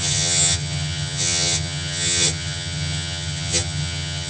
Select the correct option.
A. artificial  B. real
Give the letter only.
A